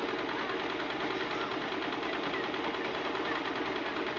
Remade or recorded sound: recorded